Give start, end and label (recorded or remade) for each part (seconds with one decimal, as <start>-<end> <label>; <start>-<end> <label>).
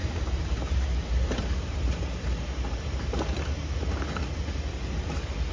0.0-3.2 remade; 3.2-5.5 recorded